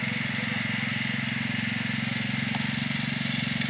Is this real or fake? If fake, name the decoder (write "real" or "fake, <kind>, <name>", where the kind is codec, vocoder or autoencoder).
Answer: real